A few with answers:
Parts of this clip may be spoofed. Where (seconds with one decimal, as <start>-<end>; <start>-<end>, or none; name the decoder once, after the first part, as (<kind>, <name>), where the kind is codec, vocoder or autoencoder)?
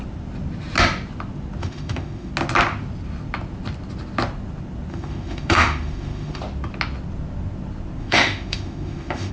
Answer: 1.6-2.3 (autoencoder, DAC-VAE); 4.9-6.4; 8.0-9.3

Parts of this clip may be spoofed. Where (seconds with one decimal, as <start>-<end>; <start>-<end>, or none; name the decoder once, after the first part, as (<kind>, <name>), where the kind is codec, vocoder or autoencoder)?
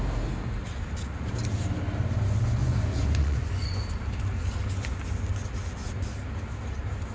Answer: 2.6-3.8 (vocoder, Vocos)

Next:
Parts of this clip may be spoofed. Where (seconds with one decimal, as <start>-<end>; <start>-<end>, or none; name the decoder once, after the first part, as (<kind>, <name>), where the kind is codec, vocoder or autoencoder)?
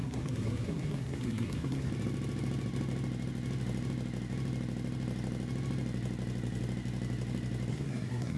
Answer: 0.0-1.9 (codec, SNAC); 7.7-8.4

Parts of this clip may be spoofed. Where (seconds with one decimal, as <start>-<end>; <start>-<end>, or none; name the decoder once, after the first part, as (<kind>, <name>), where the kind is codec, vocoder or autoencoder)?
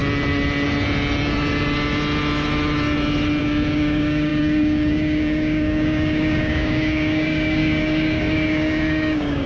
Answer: 3.4-9.5 (codec, DAC)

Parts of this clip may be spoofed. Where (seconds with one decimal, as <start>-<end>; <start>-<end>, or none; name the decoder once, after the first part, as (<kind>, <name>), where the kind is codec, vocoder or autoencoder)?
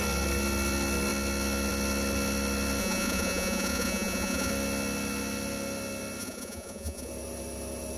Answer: 2.8-4.5 (vocoder, Vocos); 6.2-7.1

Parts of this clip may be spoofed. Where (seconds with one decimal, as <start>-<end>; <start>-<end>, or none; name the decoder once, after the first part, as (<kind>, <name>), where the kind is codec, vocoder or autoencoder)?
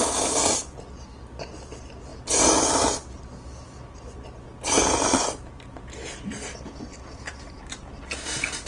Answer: none